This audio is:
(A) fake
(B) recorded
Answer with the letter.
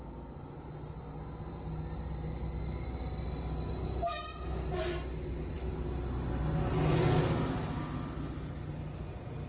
B